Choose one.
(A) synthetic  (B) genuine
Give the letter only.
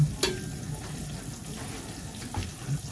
B